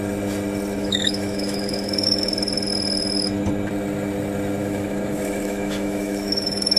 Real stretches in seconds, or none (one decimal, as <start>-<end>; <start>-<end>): 0.0-0.8; 2.3-4.6